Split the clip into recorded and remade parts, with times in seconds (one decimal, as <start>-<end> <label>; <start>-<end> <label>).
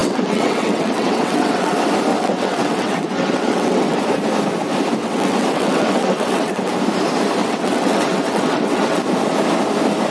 0.0-1.7 remade; 1.7-2.1 recorded; 2.1-4.0 remade; 4.0-5.0 recorded; 5.0-6.7 remade; 6.7-7.4 recorded; 7.4-9.0 remade; 9.0-10.1 recorded